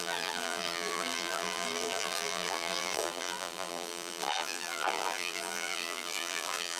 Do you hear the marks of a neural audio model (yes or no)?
yes